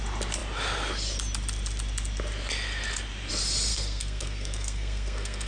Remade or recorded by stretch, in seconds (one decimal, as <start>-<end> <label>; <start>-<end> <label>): 0.0-3.7 recorded; 3.7-5.5 remade